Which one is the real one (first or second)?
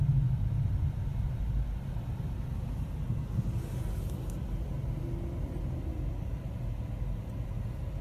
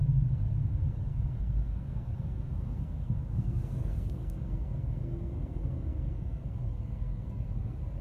first